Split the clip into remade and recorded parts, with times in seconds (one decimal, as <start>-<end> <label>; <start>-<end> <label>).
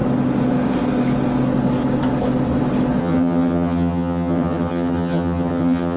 0.0-3.0 recorded; 3.0-6.0 remade